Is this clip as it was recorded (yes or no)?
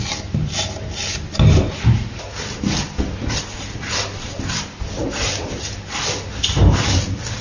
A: yes